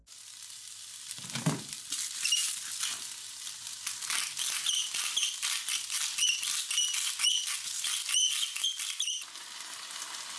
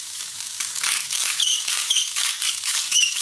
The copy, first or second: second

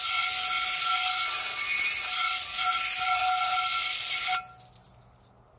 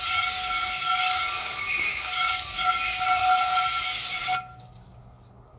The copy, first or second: second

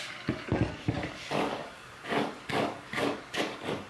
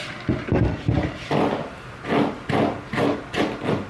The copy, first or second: first